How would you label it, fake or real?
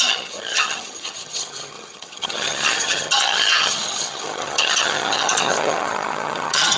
fake